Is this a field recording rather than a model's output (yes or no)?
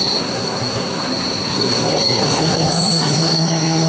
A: no